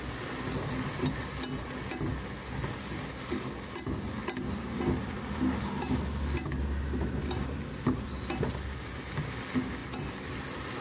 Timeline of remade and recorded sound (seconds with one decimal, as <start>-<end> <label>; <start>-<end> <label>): 0.0-10.8 recorded

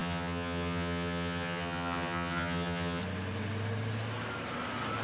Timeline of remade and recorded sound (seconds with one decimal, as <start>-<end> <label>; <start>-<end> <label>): 0.0-3.0 remade; 3.0-5.0 recorded

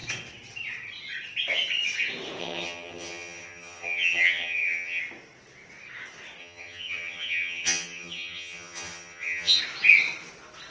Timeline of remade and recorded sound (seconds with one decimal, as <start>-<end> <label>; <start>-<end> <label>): 0.0-2.4 recorded; 2.4-5.0 remade; 5.0-6.4 recorded; 6.4-9.6 remade; 9.6-10.7 recorded

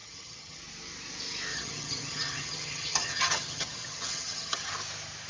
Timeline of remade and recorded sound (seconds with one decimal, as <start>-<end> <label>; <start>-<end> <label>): 0.0-0.6 remade; 0.6-1.5 recorded; 1.5-4.7 remade; 4.7-5.3 recorded